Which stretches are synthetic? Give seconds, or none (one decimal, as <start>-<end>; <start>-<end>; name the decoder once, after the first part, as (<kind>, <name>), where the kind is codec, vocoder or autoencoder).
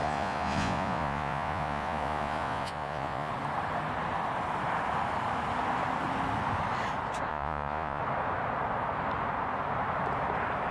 0.0-3.3 (vocoder, Vocos); 7.3-8.0